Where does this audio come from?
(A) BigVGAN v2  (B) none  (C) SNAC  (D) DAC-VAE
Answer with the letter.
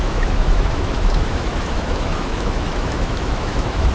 D